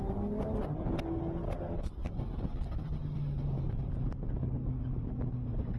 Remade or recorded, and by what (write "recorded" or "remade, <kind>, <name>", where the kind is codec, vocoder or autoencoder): recorded